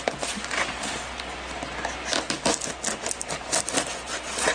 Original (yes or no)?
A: yes